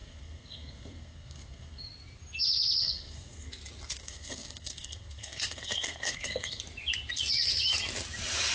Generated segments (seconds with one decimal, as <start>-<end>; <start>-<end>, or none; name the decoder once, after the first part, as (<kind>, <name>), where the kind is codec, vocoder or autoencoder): 0.0-1.8 (codec, SNAC); 2.8-3.5; 4.0-6.6